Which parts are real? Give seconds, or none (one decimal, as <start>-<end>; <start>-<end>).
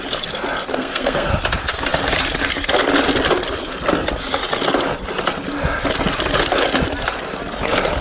0.0-0.7; 1.3-8.0